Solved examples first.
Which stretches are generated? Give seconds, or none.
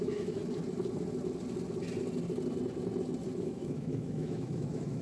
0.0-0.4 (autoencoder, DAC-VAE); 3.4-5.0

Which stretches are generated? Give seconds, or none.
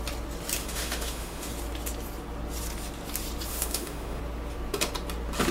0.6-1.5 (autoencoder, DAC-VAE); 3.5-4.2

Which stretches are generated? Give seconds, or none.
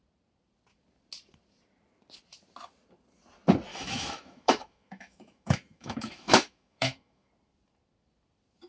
3.7-7.3 (autoencoder, DAC-VAE)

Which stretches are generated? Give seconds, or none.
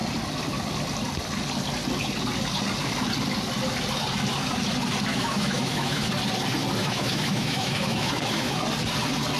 5.1-6.1 (autoencoder, DAC-VAE); 6.8-8.6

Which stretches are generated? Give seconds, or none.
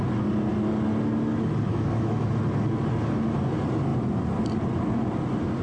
1.7-2.3 (autoencoder, DAC-VAE)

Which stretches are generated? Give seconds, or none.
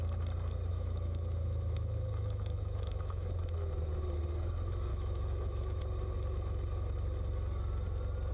0.7-3.4 (autoencoder, DAC-VAE); 4.9-5.8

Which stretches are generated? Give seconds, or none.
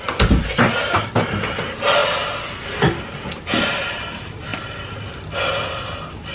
none